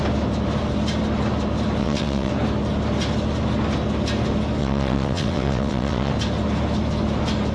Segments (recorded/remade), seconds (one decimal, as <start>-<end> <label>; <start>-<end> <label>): 0.0-1.8 recorded; 1.8-2.3 remade; 2.3-4.6 recorded; 4.6-6.1 remade; 6.1-7.5 recorded